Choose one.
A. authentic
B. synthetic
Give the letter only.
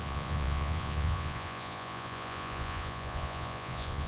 B